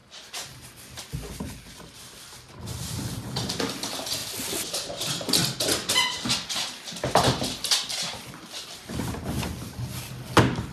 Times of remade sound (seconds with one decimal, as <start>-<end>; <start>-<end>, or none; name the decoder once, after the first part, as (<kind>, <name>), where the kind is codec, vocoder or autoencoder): none